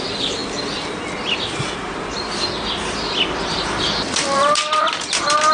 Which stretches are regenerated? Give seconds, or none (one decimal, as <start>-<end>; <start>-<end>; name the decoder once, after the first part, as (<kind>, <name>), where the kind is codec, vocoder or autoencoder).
none